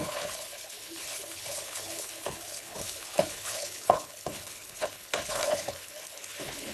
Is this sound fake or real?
fake